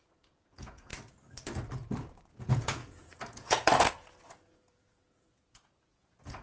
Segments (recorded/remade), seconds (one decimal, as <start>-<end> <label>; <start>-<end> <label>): 0.0-0.9 remade; 0.9-2.3 recorded; 2.3-6.4 remade